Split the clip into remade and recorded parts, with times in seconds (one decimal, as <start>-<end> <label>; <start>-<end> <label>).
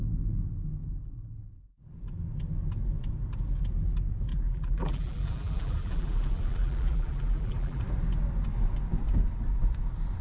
0.0-4.3 recorded; 4.3-7.8 remade; 7.8-10.2 recorded